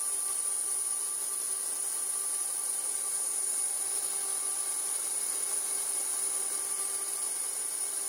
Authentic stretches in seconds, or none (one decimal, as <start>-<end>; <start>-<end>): none